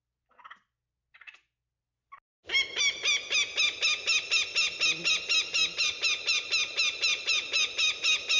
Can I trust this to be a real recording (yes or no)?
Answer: yes